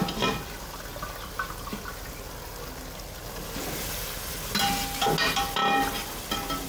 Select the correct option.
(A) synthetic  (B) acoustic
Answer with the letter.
B